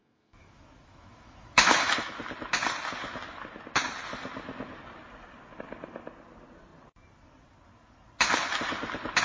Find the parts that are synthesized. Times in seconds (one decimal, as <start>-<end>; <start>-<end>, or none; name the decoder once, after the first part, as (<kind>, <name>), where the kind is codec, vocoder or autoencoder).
0.0-2.1 (autoencoder, DAC-VAE)